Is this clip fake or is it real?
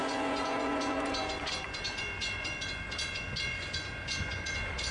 fake